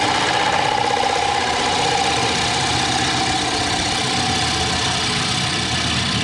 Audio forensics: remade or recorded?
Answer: recorded